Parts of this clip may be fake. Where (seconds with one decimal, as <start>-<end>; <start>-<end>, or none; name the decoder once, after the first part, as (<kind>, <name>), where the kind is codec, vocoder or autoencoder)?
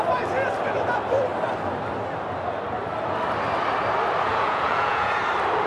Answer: 4.3-5.2 (vocoder, Vocos)